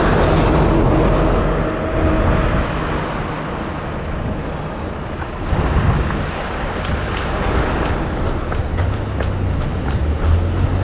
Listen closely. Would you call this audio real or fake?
real